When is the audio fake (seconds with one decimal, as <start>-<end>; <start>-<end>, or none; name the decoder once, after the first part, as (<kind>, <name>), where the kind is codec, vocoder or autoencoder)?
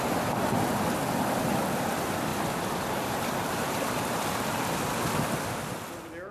none